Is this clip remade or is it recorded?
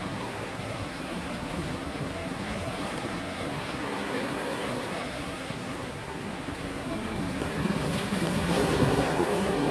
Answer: remade